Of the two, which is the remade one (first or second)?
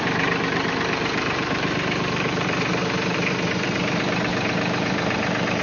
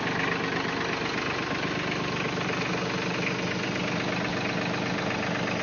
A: first